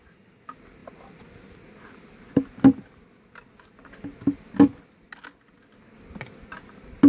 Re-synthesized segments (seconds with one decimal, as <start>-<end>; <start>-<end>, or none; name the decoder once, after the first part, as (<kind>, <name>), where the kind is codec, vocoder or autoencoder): none